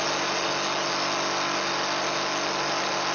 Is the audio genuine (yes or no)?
yes